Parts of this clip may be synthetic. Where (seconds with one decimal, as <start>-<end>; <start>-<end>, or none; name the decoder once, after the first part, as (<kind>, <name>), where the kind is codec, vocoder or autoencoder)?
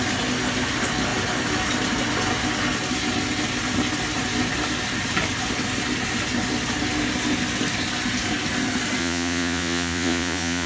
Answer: 9.0-10.7 (vocoder, Vocos)